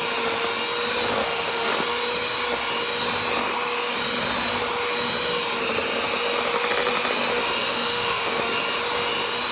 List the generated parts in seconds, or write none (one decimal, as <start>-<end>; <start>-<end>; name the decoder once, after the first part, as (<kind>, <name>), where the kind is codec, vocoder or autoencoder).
1.2-1.7 (autoencoder, DAC-VAE); 7.6-8.4